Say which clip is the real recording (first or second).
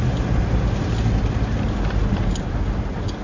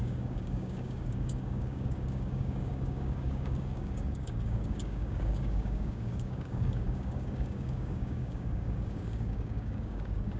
first